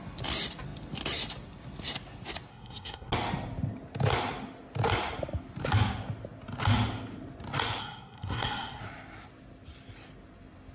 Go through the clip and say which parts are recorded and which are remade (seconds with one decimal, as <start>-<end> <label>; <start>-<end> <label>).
0.0-2.5 recorded; 2.5-3.1 remade; 3.1-7.8 recorded; 7.8-8.8 remade; 8.8-10.7 recorded